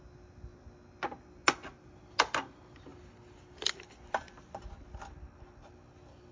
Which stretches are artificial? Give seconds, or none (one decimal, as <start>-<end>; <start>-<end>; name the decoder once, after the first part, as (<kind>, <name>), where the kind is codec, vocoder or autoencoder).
none